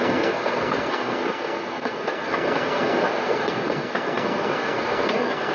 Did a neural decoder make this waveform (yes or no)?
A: yes